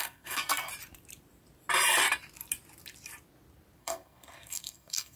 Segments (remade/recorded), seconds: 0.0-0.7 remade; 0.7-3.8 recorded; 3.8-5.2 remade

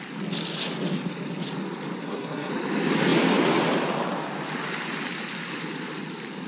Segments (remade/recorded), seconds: 0.0-2.0 recorded; 2.0-2.5 remade; 2.5-6.5 recorded

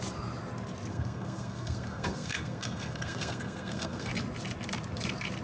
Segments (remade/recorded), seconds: 0.0-0.9 recorded; 0.9-4.1 remade; 4.1-5.4 recorded

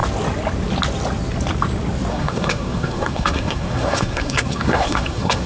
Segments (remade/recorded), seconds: 0.0-2.1 recorded; 2.1-5.5 remade

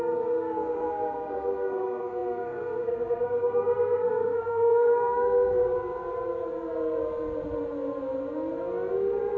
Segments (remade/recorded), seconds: 0.0-5.6 remade; 5.6-6.5 recorded; 6.5-7.0 remade; 7.0-8.9 recorded; 8.9-9.4 remade